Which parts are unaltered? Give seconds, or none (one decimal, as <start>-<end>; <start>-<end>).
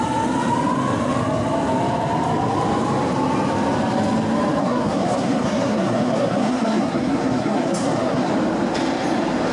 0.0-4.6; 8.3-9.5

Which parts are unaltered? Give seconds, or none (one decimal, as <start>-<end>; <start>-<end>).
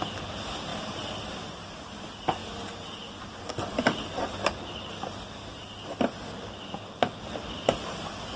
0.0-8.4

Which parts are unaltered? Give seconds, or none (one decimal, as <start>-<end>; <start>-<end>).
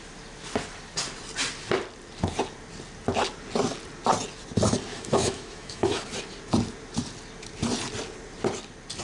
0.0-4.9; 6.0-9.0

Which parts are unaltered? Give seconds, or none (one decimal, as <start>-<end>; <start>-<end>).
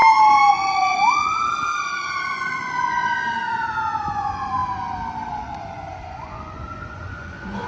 0.0-0.5; 3.0-4.1; 4.6-5.3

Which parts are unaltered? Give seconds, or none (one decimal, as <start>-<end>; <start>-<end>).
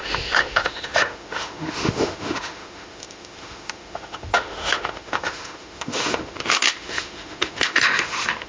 none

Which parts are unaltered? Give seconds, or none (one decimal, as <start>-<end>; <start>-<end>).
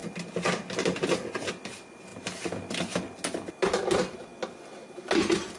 0.0-5.6